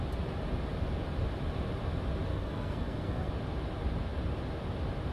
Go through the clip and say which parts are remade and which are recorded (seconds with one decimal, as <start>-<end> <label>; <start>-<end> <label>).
0.0-2.3 recorded; 2.3-3.3 remade; 3.3-5.1 recorded